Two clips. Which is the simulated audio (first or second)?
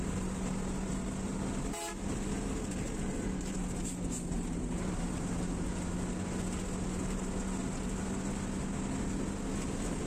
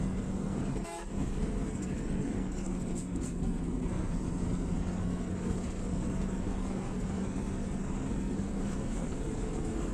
second